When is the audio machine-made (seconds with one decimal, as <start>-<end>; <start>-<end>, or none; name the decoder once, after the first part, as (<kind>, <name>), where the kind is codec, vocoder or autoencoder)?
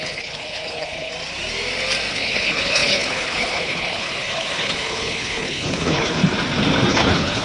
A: 0.0-1.1 (codec, HILCodec); 2.1-6.2; 6.9-7.4